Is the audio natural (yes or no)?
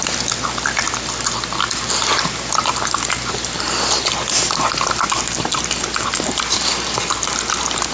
yes